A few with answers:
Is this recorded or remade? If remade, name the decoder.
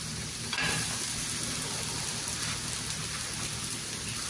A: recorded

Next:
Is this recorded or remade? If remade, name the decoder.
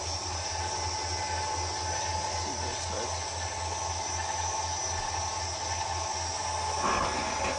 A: recorded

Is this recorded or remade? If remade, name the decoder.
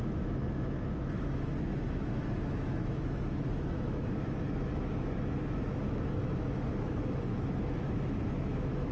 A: remade, autoencoder, DAC-VAE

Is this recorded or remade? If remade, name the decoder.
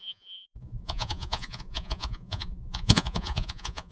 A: remade, vocoder, Vocos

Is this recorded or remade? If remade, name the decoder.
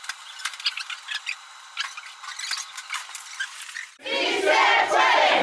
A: recorded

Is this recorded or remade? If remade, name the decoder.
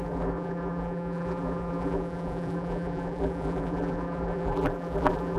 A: remade, vocoder, BigVGAN v2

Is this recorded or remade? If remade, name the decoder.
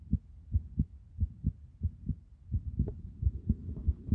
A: remade, vocoder, BigVGAN v2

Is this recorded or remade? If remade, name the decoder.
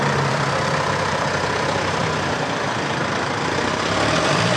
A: remade, vocoder, BigVGAN v2